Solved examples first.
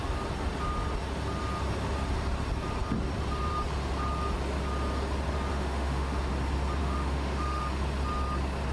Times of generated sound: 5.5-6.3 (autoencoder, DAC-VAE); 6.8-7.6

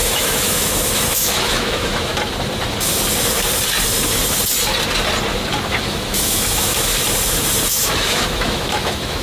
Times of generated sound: 0.0-2.1 (autoencoder, DAC-VAE); 5.8-7.0; 7.7-9.2